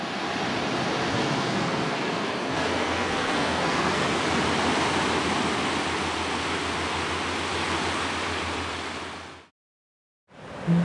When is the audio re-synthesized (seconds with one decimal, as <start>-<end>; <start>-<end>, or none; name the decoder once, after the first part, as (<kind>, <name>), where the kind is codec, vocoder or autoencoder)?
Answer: 1.1-4.2 (codec, SNAC)